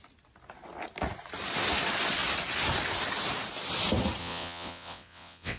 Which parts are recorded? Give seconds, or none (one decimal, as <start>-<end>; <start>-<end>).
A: 0.0-4.2